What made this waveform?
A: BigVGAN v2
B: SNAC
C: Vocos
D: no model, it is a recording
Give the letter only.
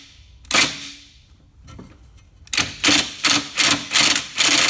D